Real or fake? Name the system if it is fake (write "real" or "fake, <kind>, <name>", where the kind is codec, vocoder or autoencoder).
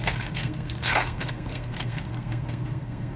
fake, codec, SNAC